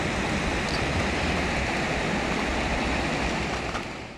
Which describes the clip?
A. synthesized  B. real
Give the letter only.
B